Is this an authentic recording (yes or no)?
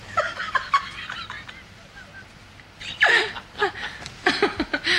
no